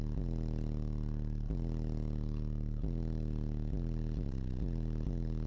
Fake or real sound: real